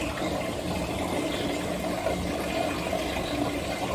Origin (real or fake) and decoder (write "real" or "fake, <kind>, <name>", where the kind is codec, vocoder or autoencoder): real